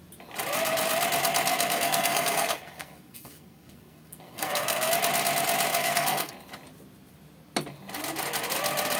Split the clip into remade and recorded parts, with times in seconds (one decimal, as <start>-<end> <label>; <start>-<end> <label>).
0.0-1.5 recorded; 1.5-4.9 remade; 4.9-5.7 recorded; 5.7-6.3 remade; 6.3-9.0 recorded